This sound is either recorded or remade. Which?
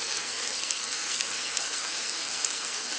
remade